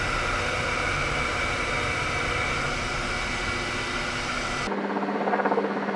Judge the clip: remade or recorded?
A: recorded